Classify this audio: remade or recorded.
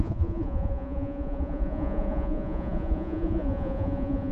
remade